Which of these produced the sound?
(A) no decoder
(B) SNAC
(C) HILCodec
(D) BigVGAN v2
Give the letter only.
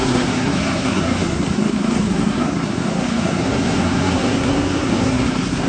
B